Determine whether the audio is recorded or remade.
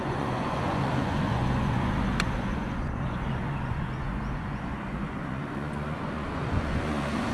remade